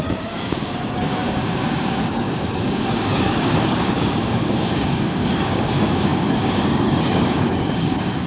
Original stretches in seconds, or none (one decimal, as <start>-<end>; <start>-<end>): none